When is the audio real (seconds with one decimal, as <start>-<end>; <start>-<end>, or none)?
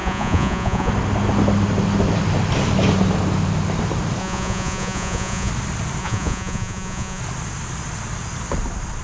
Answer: 0.9-4.2; 5.5-6.0; 7.2-9.0